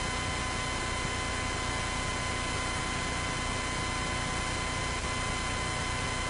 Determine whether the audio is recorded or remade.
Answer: recorded